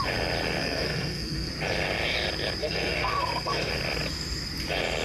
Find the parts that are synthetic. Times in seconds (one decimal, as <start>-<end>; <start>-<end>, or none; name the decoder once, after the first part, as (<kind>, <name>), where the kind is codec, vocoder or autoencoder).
0.6-1.5 (codec, SNAC); 2.6-3.7